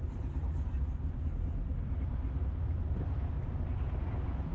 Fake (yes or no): no